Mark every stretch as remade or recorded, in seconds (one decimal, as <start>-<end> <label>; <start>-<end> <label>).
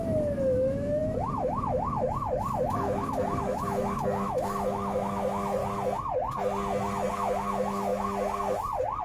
0.0-5.6 remade; 5.6-7.1 recorded; 7.1-7.9 remade; 7.9-9.0 recorded